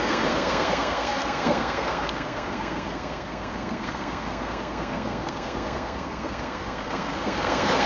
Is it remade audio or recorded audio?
remade